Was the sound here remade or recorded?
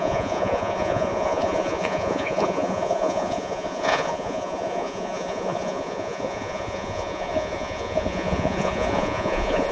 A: remade